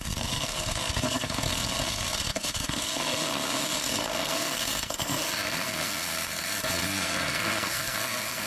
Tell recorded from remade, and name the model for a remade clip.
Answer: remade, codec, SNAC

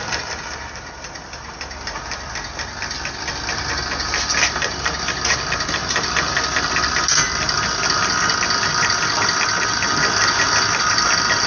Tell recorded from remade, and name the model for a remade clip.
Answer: recorded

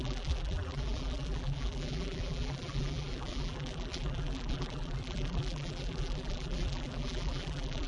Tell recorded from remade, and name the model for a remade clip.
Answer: remade, vocoder, BigVGAN v2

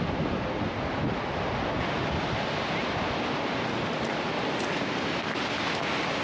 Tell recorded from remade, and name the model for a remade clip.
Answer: recorded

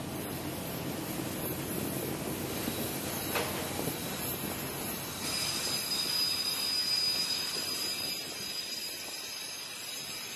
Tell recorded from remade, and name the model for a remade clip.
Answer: recorded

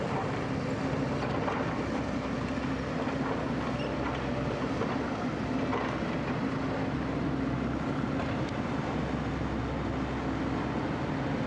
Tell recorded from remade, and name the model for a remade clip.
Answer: recorded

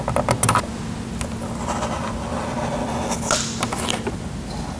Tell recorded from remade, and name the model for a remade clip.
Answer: recorded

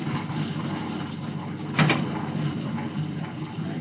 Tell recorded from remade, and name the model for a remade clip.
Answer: remade, vocoder, BigVGAN v2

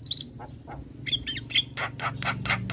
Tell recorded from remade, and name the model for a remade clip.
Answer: recorded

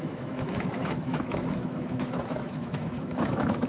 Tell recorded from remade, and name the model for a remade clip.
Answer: remade, autoencoder, DAC-VAE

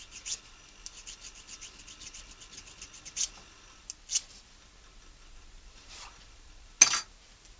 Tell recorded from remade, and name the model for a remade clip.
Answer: recorded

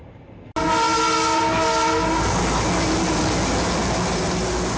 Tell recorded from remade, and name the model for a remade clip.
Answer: recorded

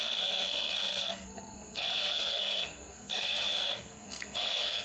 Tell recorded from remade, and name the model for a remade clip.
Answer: remade, codec, SNAC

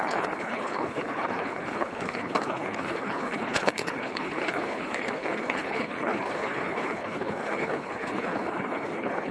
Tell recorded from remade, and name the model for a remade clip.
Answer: remade, codec, HILCodec